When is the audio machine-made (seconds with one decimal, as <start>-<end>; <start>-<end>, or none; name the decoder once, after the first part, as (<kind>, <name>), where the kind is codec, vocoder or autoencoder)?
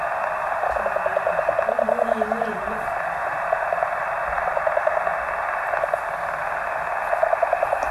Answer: 1.1-4.5 (vocoder, BigVGAN v2)